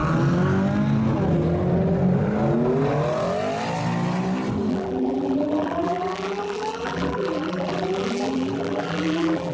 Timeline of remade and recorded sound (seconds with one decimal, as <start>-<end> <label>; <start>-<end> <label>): 0.0-4.7 recorded; 4.7-9.5 remade